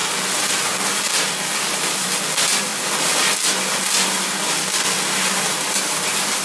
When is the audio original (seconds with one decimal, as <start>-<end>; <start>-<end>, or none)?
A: 0.0-1.6; 2.7-5.4